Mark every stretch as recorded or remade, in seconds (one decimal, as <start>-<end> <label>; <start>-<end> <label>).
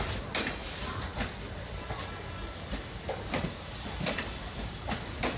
0.0-5.4 recorded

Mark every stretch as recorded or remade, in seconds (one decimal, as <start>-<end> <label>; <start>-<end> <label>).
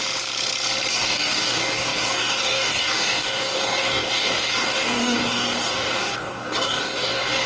0.0-0.9 recorded; 0.9-7.5 remade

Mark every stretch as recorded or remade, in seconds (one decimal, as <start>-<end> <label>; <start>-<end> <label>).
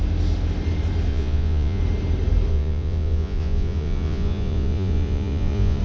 0.0-1.1 recorded; 1.1-1.8 remade; 1.8-2.5 recorded; 2.5-5.8 remade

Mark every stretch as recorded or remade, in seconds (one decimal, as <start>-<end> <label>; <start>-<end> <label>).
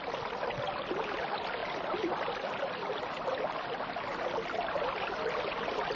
0.0-6.0 recorded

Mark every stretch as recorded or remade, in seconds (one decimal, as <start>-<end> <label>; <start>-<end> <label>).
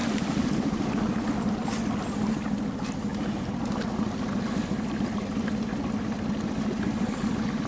0.0-1.5 remade; 1.5-3.1 recorded; 3.1-4.4 remade; 4.4-7.7 recorded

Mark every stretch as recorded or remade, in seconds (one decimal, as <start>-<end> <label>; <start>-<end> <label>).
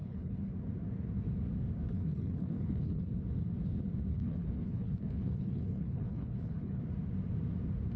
0.0-0.5 remade; 0.5-1.9 recorded; 1.9-3.1 remade; 3.1-4.1 recorded; 4.1-6.8 remade; 6.8-8.0 recorded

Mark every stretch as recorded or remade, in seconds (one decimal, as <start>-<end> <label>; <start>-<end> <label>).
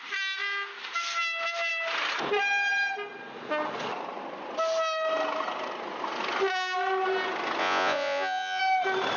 0.0-7.6 recorded; 7.6-8.6 remade; 8.6-9.2 recorded